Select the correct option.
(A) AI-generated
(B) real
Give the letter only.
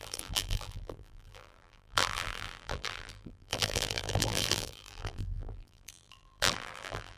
A